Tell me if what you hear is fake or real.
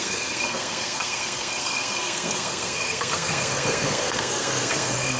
fake